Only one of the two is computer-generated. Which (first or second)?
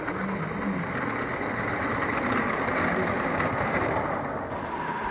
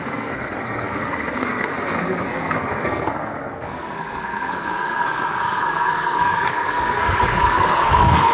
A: second